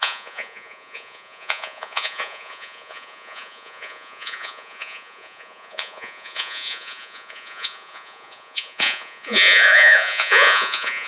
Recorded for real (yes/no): no